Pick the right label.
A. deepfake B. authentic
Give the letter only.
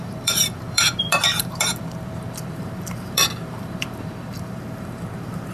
A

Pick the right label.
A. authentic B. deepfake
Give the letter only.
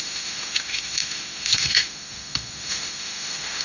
B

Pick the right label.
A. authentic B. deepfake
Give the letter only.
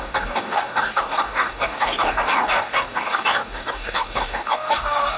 B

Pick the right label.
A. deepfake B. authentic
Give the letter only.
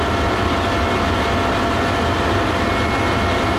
B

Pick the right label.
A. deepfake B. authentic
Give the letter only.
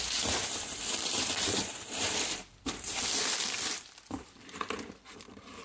A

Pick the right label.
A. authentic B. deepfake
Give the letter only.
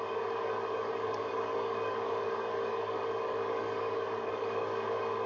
B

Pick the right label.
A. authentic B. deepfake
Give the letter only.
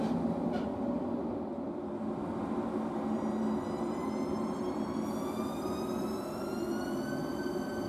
A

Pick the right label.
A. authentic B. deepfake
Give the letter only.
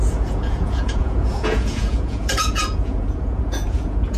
B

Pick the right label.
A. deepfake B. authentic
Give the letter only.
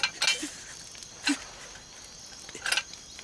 B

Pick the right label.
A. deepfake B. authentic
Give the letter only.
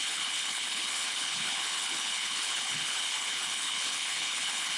A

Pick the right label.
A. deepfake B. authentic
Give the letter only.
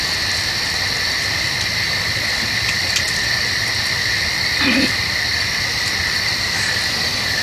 B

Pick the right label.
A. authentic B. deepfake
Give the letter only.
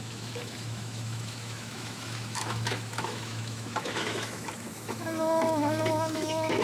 B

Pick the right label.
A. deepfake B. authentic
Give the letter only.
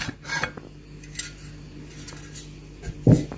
B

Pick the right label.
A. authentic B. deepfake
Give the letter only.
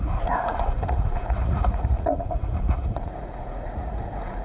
B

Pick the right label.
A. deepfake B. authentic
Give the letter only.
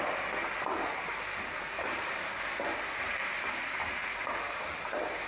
B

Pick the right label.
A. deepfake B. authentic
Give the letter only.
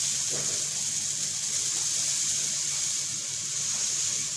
B